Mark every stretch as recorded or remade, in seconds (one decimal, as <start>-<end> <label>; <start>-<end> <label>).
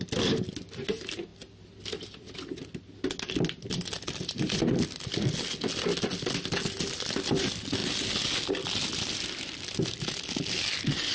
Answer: 0.0-11.1 recorded